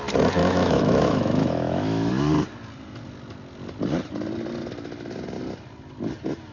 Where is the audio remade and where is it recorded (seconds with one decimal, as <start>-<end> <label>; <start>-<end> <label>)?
0.0-0.4 recorded; 0.4-2.1 remade; 2.1-6.5 recorded